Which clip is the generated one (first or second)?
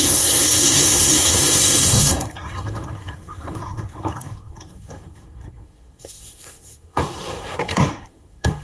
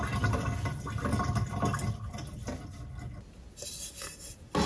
first